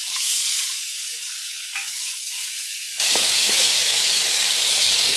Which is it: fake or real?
fake